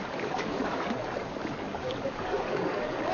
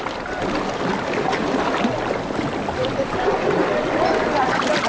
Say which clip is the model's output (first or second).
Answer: first